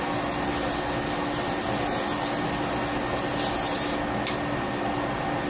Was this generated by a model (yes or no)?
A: no